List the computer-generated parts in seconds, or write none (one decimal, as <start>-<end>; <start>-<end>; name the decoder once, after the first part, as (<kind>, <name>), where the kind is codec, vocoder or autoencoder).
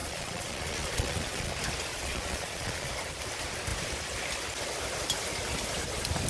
0.0-1.5 (vocoder, Vocos); 1.9-2.9